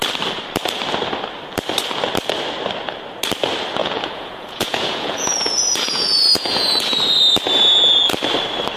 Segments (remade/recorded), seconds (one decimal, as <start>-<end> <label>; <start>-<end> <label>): 0.0-3.8 recorded; 3.8-7.2 remade; 7.2-8.8 recorded

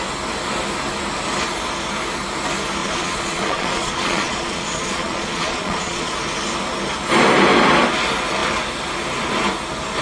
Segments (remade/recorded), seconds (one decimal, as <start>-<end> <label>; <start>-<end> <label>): 0.0-2.8 recorded; 2.8-6.1 remade; 6.1-10.0 recorded

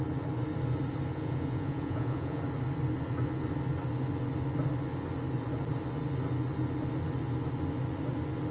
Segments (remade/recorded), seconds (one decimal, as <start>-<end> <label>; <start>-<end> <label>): 0.0-1.1 recorded; 1.1-2.4 remade; 2.4-8.5 recorded

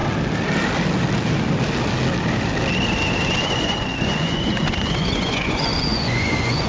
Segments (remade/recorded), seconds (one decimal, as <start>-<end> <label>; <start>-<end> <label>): 0.0-3.4 recorded; 3.4-6.7 remade

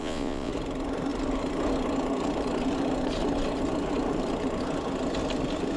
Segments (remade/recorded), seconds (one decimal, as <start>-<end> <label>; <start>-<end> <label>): 0.0-0.5 remade; 0.5-5.8 recorded

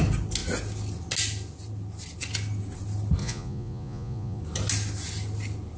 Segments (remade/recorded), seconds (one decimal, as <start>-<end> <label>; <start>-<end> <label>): 0.0-3.2 recorded; 3.2-4.4 remade; 4.4-5.8 recorded